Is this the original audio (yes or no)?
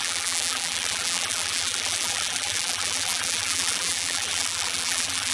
no